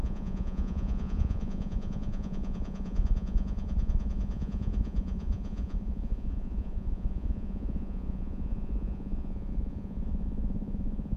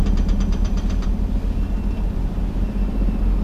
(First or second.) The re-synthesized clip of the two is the first